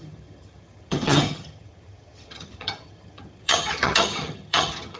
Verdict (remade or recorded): remade